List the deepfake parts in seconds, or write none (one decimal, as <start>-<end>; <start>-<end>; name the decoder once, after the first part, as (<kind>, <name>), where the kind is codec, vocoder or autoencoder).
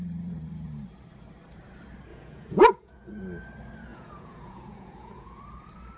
2.1-3.1 (vocoder, Vocos); 3.9-5.4